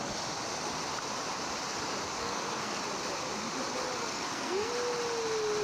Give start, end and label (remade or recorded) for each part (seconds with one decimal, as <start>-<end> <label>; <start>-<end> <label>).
0.0-2.2 recorded; 2.2-2.8 remade; 2.8-4.0 recorded; 4.0-4.7 remade; 4.7-5.6 recorded